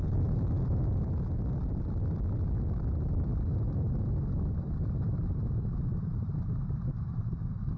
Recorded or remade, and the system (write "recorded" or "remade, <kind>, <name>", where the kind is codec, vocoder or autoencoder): remade, vocoder, BigVGAN v2